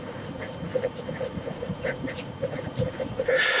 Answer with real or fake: fake